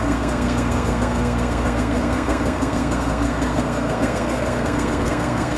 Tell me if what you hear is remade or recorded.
remade